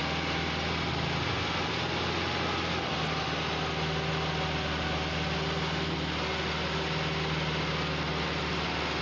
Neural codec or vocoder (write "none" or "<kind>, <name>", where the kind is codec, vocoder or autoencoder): none